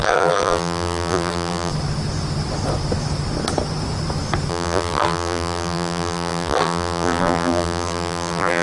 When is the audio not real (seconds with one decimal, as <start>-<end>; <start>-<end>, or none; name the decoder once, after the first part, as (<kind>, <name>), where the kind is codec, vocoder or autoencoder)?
0.0-1.7 (vocoder, BigVGAN v2); 4.5-8.6